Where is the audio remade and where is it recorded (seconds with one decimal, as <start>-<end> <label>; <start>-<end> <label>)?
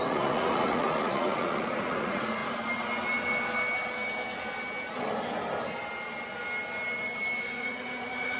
0.0-2.4 remade; 2.4-7.4 recorded; 7.4-8.4 remade